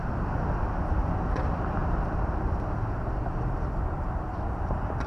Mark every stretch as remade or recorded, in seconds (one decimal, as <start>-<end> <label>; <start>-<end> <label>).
0.0-5.1 recorded